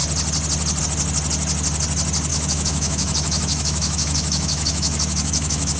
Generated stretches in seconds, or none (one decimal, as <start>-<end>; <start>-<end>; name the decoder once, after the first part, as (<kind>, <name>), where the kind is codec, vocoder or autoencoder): 2.3-5.8 (autoencoder, DAC-VAE)

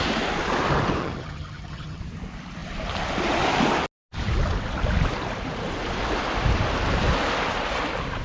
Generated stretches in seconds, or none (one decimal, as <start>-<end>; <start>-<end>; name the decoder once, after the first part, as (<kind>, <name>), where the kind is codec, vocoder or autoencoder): 1.0-2.0 (vocoder, HiFi-GAN)